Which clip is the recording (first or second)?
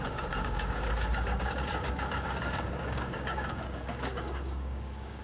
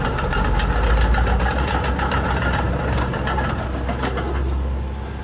second